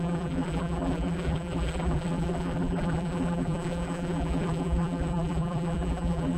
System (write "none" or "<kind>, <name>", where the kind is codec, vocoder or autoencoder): vocoder, BigVGAN v2